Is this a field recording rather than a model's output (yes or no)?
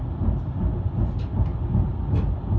yes